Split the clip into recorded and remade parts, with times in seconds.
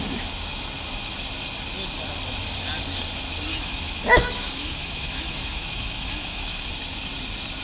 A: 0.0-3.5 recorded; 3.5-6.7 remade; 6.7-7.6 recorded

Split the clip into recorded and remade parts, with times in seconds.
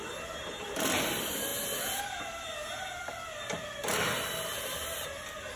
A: 0.0-5.6 recorded